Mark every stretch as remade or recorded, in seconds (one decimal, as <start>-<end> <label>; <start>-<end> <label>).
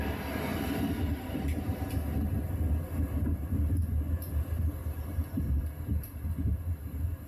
0.0-0.5 recorded; 0.5-1.9 remade; 1.9-4.8 recorded; 4.8-5.6 remade; 5.6-7.3 recorded